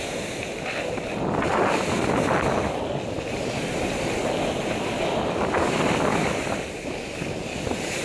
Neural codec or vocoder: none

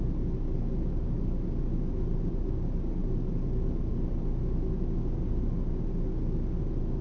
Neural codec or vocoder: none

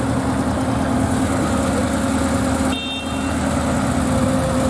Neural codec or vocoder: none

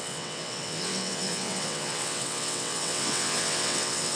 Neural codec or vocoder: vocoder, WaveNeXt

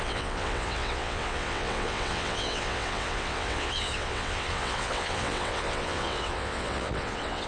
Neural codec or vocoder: vocoder, WaveNeXt